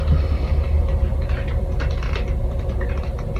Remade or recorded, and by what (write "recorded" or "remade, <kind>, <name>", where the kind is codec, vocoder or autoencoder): recorded